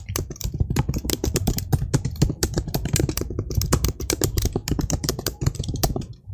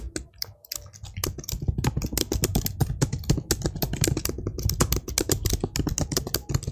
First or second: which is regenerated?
first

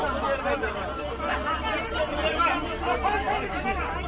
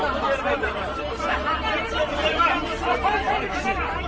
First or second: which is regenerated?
second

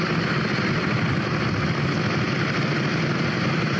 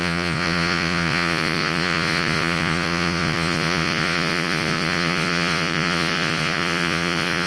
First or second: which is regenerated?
second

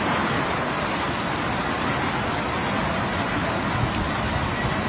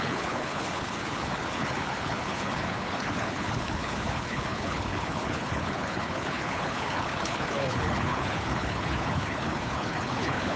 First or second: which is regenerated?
second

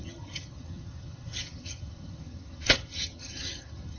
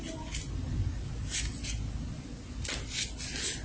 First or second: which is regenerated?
first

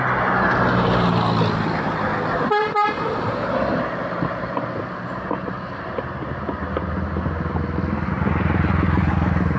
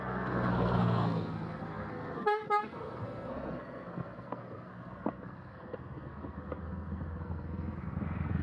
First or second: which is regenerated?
second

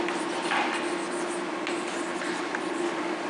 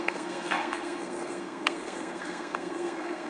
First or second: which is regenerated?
second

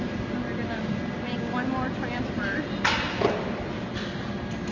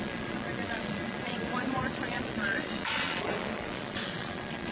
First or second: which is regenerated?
second